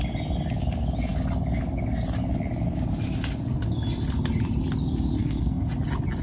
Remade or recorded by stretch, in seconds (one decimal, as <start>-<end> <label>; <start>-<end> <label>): 0.0-5.2 recorded; 5.2-5.7 remade; 5.7-6.2 recorded